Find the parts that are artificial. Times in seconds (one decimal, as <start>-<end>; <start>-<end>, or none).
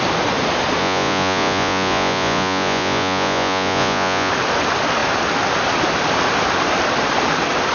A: 0.8-4.3